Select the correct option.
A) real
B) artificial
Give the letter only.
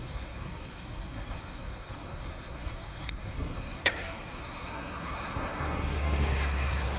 B